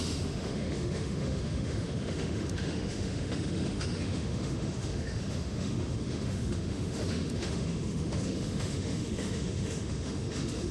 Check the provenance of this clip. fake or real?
fake